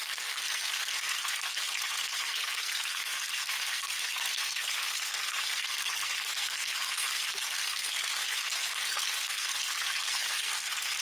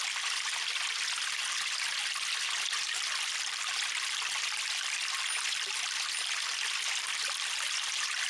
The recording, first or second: second